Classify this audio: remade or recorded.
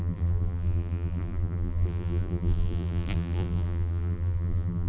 remade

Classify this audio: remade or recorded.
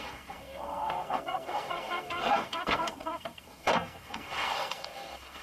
remade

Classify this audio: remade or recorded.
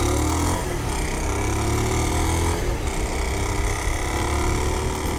recorded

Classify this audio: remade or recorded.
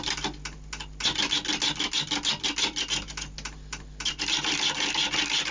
recorded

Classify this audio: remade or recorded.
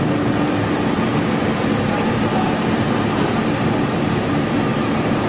remade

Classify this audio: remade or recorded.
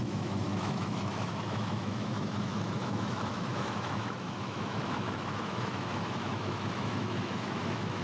remade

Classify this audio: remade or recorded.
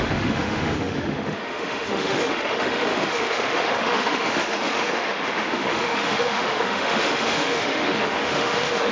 remade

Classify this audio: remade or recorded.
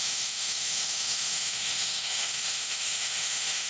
remade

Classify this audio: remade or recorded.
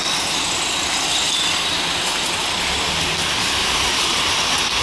recorded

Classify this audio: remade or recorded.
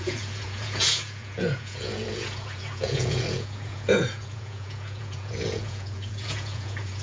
remade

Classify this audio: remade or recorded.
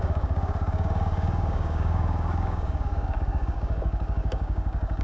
remade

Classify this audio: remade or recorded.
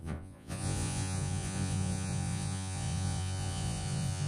remade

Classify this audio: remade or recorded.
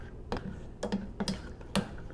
recorded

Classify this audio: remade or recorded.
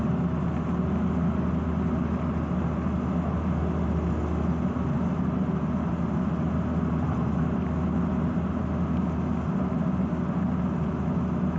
recorded